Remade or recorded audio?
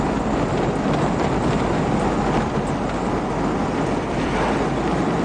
recorded